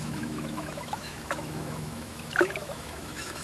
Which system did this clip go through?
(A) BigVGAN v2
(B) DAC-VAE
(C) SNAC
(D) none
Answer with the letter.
B